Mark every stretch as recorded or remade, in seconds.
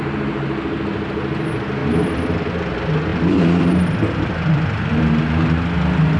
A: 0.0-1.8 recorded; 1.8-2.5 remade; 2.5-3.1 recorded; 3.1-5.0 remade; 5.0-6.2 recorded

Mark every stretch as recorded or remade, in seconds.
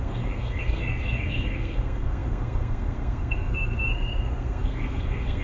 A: 0.0-5.4 remade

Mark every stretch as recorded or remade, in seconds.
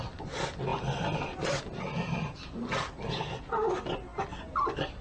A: 0.0-5.0 recorded